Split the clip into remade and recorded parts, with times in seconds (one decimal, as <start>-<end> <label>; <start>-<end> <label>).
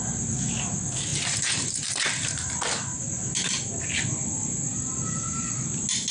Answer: 0.0-6.1 recorded